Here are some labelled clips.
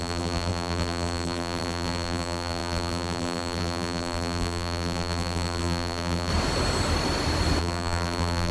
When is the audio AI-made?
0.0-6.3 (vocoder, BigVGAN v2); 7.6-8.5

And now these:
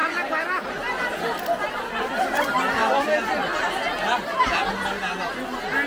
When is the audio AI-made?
none

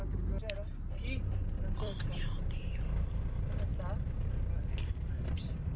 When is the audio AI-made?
1.3-3.7 (vocoder, BigVGAN v2); 4.6-5.8